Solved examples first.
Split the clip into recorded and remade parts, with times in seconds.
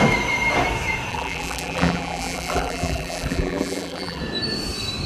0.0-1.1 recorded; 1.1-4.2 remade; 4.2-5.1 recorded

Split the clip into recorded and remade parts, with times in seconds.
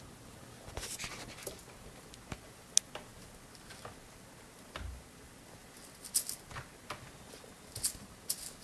0.0-8.6 recorded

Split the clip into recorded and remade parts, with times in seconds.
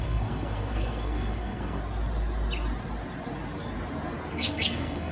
0.0-1.8 remade; 1.8-4.3 recorded; 4.3-5.1 remade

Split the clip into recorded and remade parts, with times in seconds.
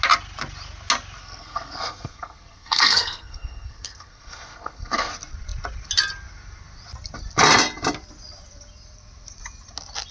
0.0-1.2 recorded; 1.2-5.1 remade; 5.1-10.1 recorded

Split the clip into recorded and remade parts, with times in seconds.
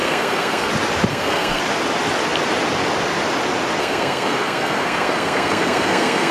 0.0-0.7 remade; 0.7-1.1 recorded; 1.1-1.6 remade; 1.6-3.8 recorded; 3.8-6.3 remade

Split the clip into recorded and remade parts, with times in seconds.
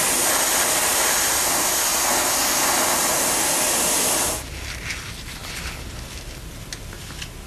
0.0-7.5 recorded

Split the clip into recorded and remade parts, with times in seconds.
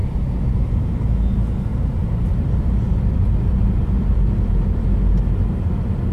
0.0-0.8 remade; 0.8-1.7 recorded; 1.7-4.4 remade; 4.4-6.1 recorded